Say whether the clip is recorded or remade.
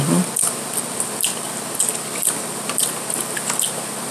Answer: recorded